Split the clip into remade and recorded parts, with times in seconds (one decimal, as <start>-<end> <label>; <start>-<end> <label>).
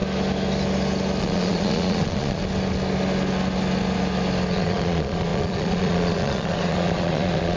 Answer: 0.0-1.2 recorded; 1.2-2.4 remade; 2.4-4.5 recorded; 4.5-7.6 remade